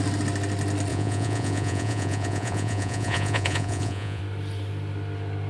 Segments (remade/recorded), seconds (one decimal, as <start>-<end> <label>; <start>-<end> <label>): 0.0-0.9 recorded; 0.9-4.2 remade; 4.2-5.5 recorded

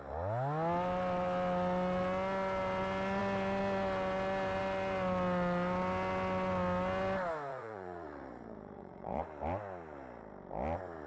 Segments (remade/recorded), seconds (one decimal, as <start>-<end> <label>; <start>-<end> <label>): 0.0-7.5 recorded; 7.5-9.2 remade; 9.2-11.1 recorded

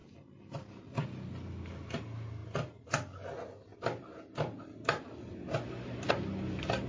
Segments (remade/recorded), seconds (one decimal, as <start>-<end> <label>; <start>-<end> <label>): 0.0-6.9 recorded

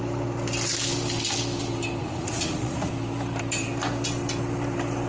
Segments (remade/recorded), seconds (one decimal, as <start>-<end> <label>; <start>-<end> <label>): 0.0-2.0 recorded; 2.0-2.9 remade; 2.9-5.1 recorded

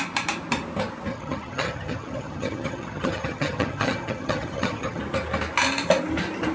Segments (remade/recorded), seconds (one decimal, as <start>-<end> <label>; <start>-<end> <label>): 0.0-1.1 recorded; 1.1-5.0 remade; 5.0-6.5 recorded